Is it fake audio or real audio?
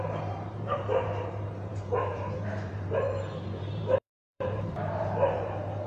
fake